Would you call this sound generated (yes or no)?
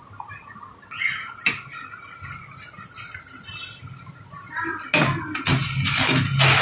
no